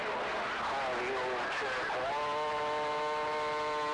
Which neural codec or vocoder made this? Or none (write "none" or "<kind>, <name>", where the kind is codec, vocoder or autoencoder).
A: none